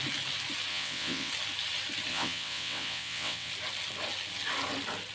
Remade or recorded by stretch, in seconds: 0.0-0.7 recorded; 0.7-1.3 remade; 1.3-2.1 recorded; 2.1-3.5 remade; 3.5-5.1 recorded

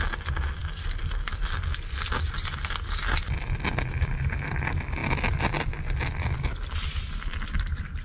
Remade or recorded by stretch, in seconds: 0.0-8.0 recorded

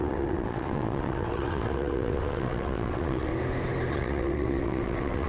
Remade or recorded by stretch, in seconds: 0.0-3.3 remade; 3.3-3.9 recorded; 3.9-5.3 remade